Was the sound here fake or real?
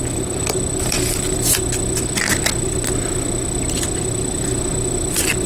real